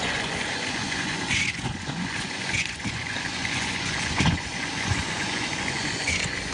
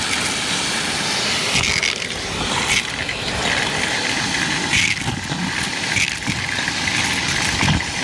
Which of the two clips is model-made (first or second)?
first